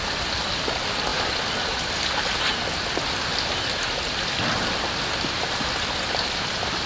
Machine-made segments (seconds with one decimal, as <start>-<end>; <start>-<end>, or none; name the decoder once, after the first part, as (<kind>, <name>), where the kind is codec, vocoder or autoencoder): none